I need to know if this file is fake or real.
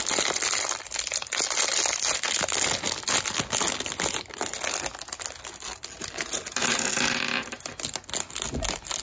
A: real